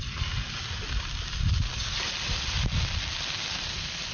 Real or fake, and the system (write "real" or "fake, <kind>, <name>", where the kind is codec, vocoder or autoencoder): real